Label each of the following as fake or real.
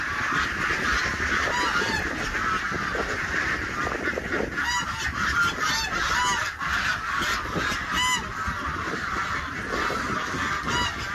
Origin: real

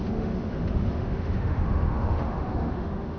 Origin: fake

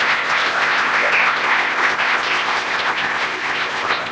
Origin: fake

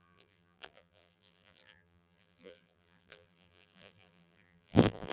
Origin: fake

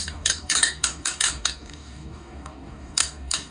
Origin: fake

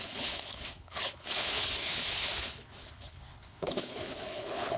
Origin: fake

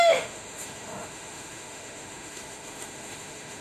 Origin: fake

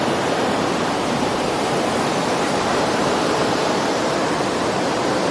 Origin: fake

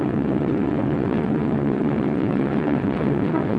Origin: fake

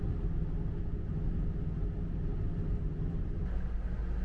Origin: real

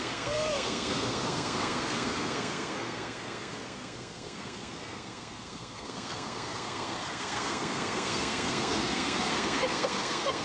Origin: fake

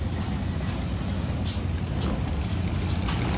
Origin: real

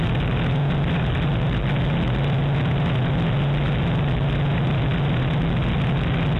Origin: real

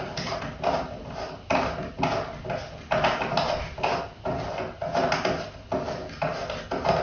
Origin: real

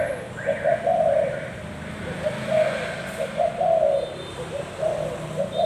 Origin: real